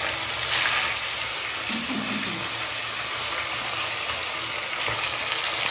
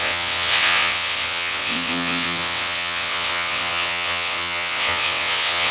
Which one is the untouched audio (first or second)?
first